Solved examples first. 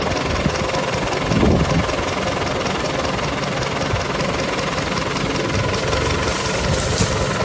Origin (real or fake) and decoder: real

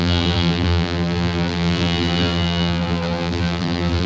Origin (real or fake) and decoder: fake, vocoder, BigVGAN v2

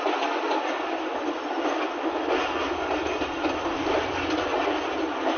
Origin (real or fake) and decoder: fake, vocoder, BigVGAN v2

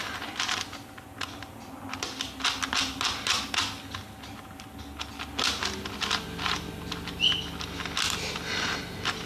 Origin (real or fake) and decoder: real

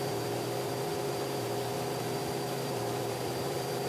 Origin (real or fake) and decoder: fake, vocoder, BigVGAN v2